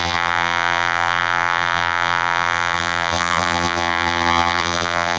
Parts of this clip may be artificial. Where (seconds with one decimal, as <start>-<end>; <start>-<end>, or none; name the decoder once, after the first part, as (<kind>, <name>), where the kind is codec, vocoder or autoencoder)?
0.0-5.2 (vocoder, BigVGAN v2)